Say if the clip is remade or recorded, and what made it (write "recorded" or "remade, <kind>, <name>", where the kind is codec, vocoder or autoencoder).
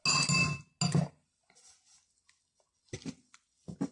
recorded